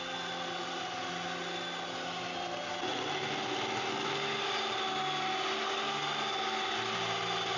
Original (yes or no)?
yes